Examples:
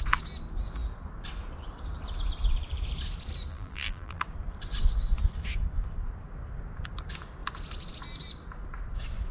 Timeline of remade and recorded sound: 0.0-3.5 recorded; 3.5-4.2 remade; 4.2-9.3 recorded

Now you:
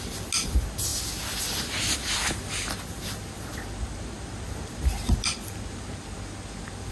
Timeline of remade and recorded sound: 0.0-6.9 recorded

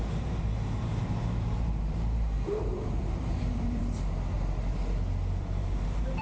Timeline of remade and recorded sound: 0.0-3.8 remade; 3.8-5.4 recorded; 5.4-6.2 remade

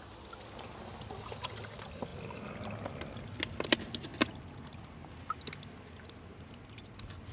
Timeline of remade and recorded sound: 0.0-7.3 recorded

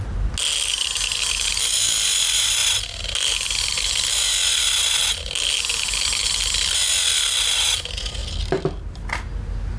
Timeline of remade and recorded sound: 0.0-9.8 recorded

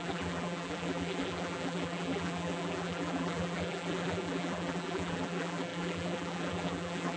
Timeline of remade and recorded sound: 0.0-7.2 remade

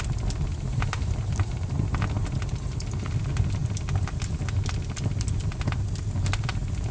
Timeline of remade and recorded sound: 0.0-0.7 recorded; 0.7-1.9 remade; 1.9-6.9 recorded

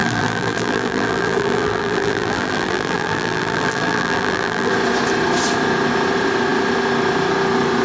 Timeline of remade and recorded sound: 0.0-4.7 remade; 4.7-7.8 recorded